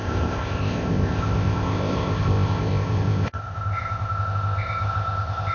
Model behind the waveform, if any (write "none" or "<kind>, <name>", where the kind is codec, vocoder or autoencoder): codec, ZipCodec